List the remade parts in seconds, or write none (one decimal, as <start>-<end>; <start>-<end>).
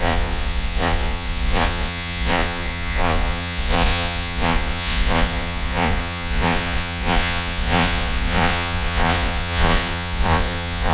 0.0-10.9